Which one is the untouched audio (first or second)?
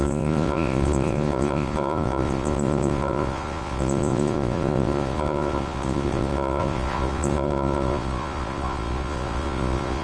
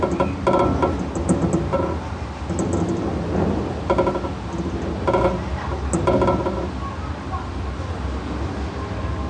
second